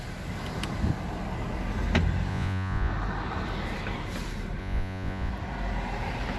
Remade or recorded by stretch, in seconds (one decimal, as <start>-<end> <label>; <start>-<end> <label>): 0.0-2.3 recorded; 2.3-2.9 remade; 2.9-4.6 recorded; 4.6-5.3 remade; 5.3-6.4 recorded